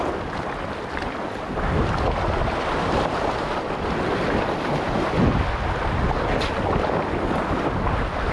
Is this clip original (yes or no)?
yes